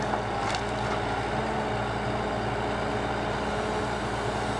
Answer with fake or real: real